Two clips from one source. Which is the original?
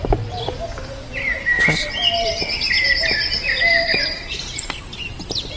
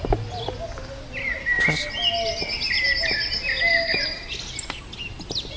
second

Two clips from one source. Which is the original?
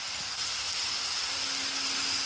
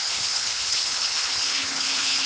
first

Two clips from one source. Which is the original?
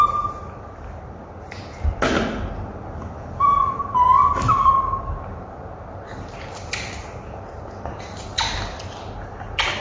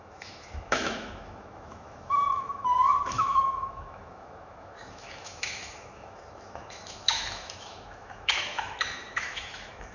first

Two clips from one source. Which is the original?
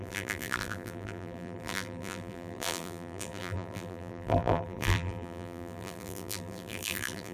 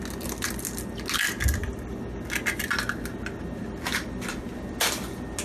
second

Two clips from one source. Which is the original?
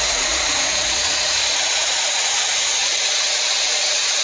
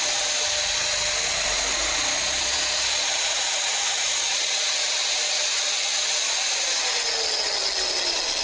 second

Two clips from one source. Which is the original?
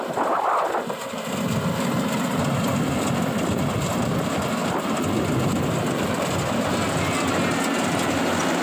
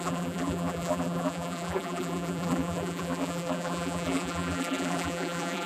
first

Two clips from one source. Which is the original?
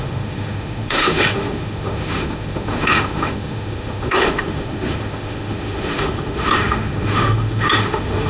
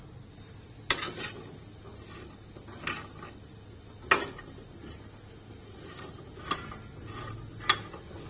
second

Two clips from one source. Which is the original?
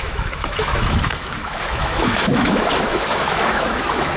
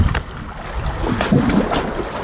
second